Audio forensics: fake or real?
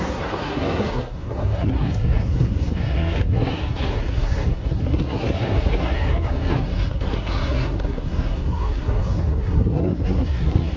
fake